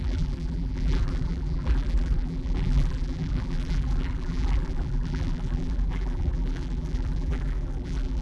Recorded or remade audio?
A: remade